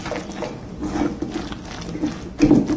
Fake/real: real